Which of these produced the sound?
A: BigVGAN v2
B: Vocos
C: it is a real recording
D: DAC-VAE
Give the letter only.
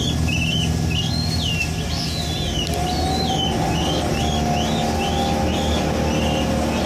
C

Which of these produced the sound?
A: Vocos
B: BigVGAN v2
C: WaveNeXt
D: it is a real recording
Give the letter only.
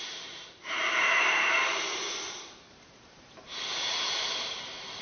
B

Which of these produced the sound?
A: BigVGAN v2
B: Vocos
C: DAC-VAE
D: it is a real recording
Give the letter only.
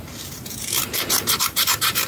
A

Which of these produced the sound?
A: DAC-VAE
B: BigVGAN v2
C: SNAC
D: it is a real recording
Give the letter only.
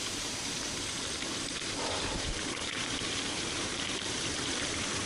B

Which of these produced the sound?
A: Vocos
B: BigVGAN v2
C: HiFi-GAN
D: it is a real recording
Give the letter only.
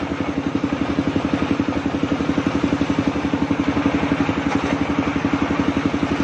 D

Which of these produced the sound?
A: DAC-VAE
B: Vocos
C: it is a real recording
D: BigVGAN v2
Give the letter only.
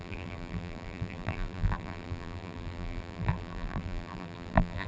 D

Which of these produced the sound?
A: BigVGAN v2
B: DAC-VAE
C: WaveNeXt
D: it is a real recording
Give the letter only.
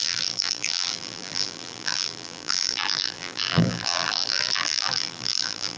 A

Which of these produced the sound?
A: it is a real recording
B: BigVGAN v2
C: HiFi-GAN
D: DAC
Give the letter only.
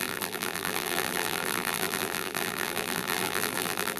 B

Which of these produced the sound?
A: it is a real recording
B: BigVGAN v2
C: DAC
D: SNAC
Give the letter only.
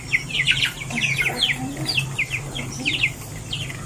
A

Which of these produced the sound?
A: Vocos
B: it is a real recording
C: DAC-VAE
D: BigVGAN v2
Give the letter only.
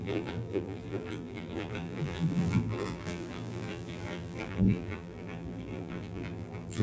D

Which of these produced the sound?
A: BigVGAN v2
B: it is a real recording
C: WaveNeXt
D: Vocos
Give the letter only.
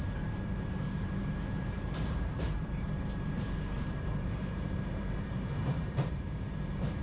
A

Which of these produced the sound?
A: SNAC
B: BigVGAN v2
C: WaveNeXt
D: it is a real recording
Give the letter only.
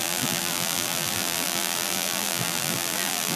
B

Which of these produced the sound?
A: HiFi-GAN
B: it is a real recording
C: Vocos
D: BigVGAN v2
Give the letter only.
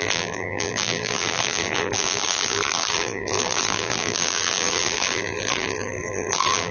D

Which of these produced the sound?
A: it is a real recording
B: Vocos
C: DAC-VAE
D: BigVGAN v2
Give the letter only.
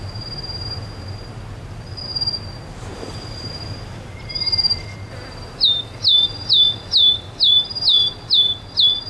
A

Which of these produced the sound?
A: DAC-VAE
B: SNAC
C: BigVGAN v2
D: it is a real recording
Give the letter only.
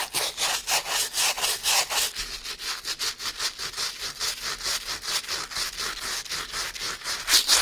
D